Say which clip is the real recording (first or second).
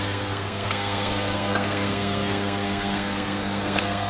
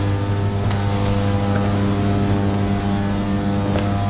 second